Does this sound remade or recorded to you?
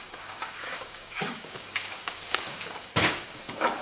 remade